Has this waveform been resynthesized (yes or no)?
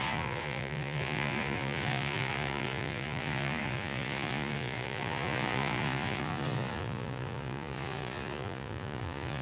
yes